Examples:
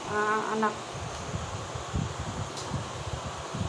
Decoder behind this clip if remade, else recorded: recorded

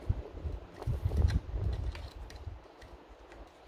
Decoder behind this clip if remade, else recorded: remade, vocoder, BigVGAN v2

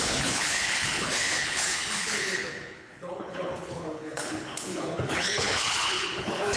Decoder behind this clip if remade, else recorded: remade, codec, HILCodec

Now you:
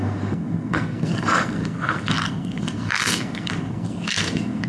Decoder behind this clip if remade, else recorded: remade, codec, SNAC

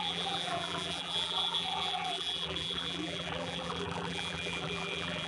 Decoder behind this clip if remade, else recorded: remade, vocoder, BigVGAN v2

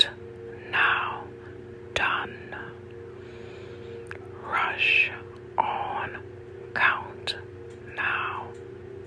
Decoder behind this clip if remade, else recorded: recorded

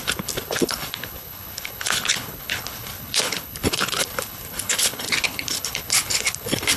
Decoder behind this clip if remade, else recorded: remade, codec, HILCodec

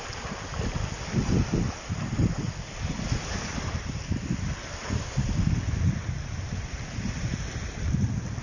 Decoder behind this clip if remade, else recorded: recorded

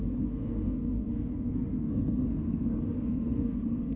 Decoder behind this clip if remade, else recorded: remade, codec, SNAC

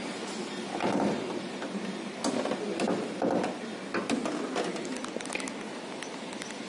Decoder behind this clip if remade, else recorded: recorded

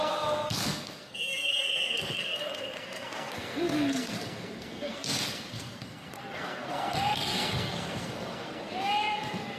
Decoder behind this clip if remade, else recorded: remade, codec, SNAC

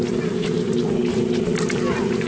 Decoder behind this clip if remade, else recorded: recorded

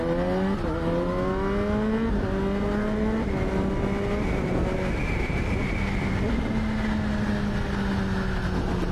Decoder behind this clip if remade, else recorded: recorded